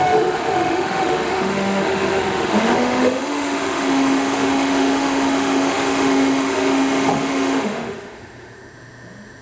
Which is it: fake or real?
fake